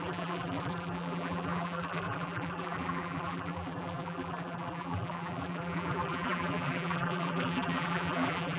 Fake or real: fake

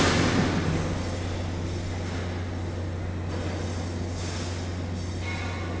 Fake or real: real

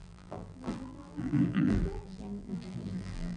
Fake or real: fake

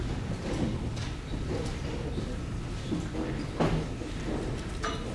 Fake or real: real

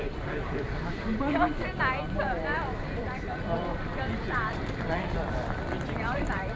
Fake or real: fake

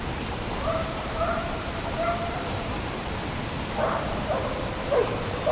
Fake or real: fake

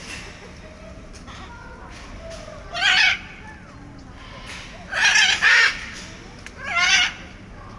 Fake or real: real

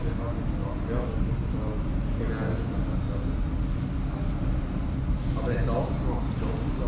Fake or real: real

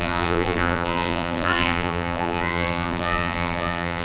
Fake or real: fake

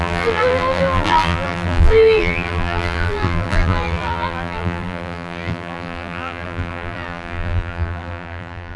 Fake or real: fake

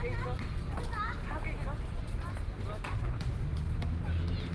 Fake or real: real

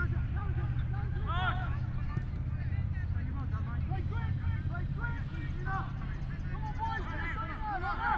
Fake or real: real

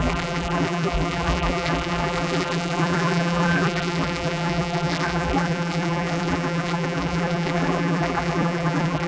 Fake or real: fake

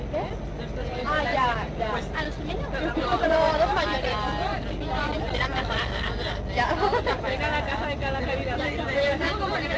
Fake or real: real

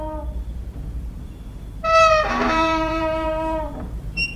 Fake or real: fake